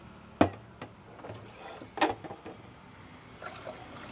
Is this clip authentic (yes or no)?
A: yes